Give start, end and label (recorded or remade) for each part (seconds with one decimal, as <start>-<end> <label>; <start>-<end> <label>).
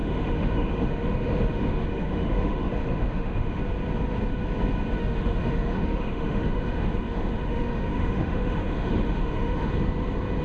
0.0-3.6 remade; 3.6-5.0 recorded; 5.0-9.7 remade; 9.7-10.4 recorded